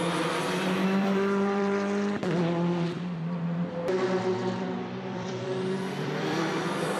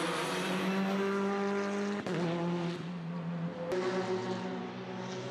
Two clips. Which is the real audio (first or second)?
second